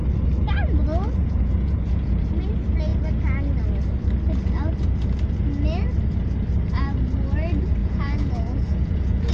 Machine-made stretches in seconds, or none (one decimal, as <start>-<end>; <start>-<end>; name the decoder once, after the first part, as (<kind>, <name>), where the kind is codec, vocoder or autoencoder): 1.2-2.3 (vocoder, Vocos); 7.8-9.3